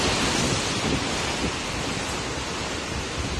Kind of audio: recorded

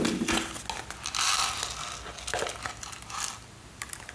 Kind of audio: recorded